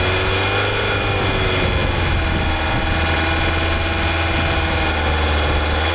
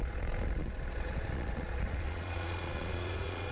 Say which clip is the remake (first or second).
second